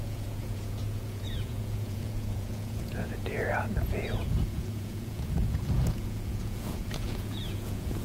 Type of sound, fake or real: fake